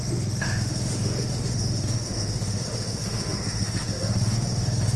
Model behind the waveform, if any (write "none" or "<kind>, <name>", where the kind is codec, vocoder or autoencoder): autoencoder, DAC-VAE